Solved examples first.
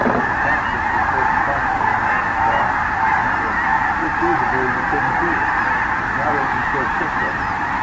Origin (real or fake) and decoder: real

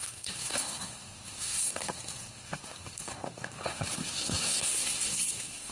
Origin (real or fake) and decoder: fake, codec, SNAC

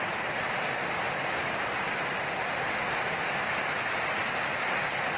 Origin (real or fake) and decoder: real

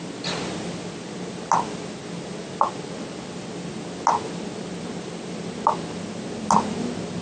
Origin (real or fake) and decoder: real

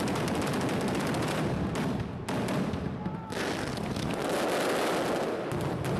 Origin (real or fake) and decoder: real